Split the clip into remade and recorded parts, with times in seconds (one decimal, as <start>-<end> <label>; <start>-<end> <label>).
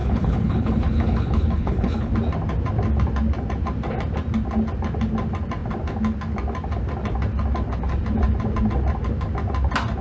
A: 0.0-2.1 remade; 2.1-10.0 recorded